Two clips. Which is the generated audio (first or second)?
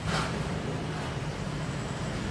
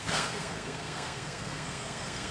second